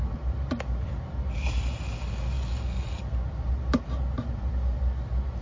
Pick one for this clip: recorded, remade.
recorded